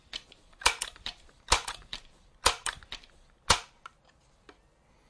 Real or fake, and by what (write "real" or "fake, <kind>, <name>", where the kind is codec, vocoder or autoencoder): real